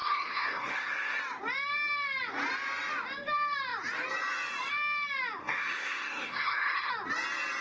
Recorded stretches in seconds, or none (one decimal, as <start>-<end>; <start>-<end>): 1.2-5.4; 6.9-7.6